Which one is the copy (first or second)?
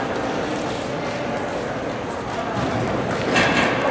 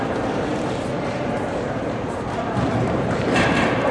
second